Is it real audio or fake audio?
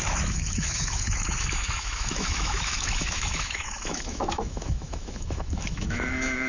fake